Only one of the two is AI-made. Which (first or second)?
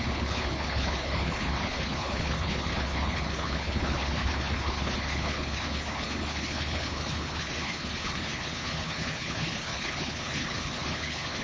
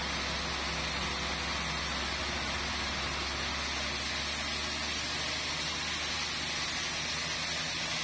first